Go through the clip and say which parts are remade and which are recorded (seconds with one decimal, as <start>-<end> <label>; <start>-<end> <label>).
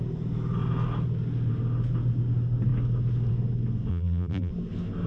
0.0-3.9 recorded; 3.9-4.5 remade; 4.5-5.1 recorded